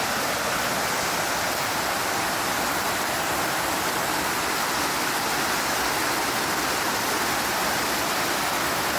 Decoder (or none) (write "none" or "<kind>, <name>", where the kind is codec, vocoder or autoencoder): none